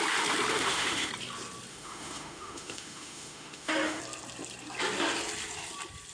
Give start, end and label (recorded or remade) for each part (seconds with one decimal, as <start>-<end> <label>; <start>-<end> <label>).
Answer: 0.0-0.5 recorded; 0.5-1.1 remade; 1.1-1.7 recorded; 1.7-4.0 remade; 4.0-6.1 recorded